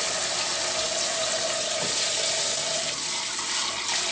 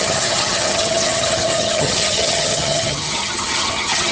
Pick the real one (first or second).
first